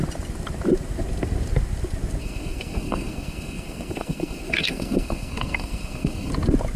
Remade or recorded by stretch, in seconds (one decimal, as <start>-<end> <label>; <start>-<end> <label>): 0.0-2.2 recorded; 2.2-6.3 remade; 6.3-6.8 recorded

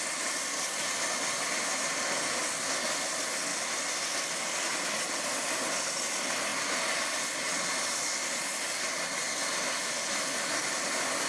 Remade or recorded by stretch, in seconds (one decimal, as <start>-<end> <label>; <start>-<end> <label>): 0.0-11.3 recorded

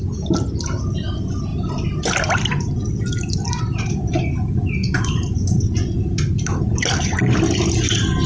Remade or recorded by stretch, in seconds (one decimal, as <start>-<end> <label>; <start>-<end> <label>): 0.0-8.3 recorded

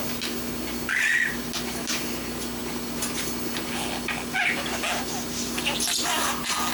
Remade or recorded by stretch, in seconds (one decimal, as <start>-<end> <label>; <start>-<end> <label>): 0.0-6.7 recorded